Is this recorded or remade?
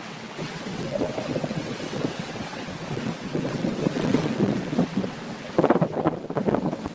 remade